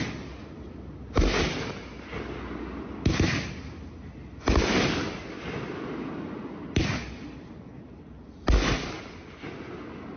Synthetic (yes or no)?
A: no